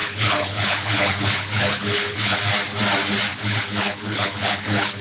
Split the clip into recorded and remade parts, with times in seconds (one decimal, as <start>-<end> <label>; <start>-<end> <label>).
0.0-2.4 remade; 2.4-3.3 recorded; 3.3-5.0 remade